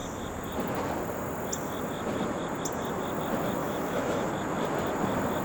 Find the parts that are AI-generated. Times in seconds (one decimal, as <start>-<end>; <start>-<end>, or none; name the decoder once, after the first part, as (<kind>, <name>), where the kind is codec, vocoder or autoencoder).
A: 3.6-4.3 (autoencoder, DAC-VAE)